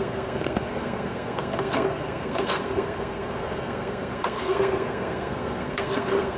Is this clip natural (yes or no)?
no